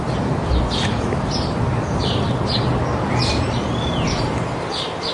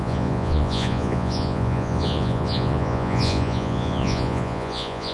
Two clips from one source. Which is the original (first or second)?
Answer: first